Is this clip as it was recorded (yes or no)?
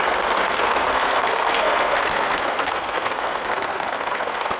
no